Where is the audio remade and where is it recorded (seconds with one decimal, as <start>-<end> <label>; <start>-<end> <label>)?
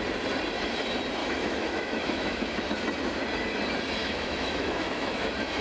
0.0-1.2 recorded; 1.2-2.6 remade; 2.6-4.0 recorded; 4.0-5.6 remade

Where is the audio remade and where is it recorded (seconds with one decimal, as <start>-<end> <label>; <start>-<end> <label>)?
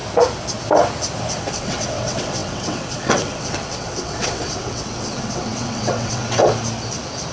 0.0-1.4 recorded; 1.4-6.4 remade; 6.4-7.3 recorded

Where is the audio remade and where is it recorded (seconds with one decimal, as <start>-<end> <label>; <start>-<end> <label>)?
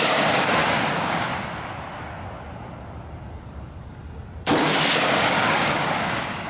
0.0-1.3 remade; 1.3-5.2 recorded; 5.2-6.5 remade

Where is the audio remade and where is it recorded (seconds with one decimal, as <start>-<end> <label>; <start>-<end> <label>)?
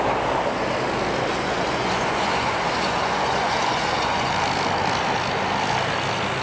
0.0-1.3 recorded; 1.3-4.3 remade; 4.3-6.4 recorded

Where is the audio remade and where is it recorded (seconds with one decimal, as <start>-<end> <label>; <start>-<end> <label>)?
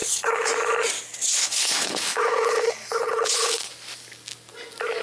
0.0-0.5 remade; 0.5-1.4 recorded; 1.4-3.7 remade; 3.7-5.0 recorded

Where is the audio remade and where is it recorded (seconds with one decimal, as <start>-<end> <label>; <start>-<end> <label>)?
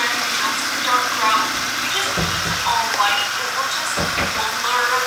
0.0-2.9 remade; 2.9-5.1 recorded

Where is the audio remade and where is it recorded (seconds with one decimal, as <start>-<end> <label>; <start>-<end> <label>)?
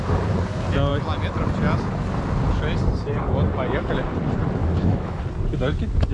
0.0-4.6 recorded; 4.6-5.2 remade; 5.2-6.1 recorded